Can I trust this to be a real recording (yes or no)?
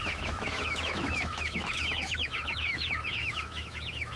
no